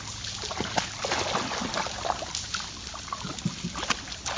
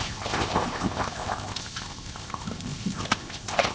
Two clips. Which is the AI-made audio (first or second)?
second